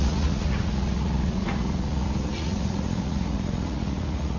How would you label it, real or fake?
fake